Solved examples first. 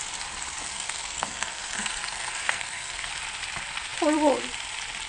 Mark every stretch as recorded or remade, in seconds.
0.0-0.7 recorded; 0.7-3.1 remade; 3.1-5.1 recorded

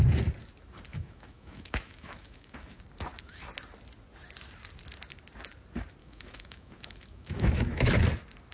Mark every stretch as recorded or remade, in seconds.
0.0-0.9 recorded; 0.9-2.8 remade; 2.8-6.0 recorded; 6.0-7.9 remade; 7.9-8.5 recorded

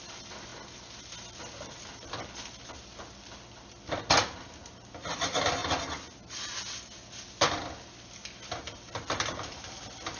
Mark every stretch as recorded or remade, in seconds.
0.0-10.2 recorded

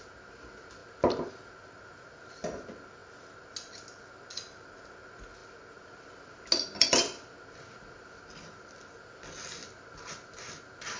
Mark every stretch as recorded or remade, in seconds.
0.0-11.0 recorded

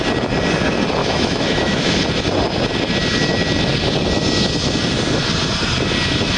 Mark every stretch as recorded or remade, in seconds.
0.0-1.0 recorded; 1.0-2.0 remade; 2.0-6.4 recorded

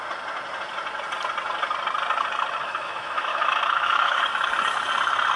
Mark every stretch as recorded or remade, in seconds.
0.0-2.6 recorded; 2.6-4.2 remade; 4.2-5.4 recorded

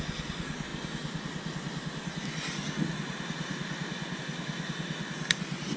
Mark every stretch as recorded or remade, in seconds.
0.0-5.8 recorded

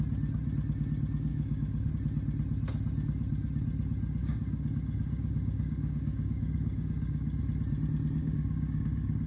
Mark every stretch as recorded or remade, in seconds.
0.0-1.3 recorded; 1.3-1.9 remade; 1.9-4.2 recorded; 4.2-7.4 remade; 7.4-8.2 recorded; 8.2-9.3 remade